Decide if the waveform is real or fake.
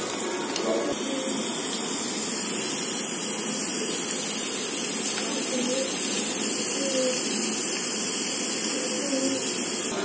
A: real